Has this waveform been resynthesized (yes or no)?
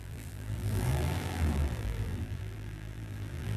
yes